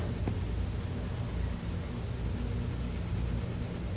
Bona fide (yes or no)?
yes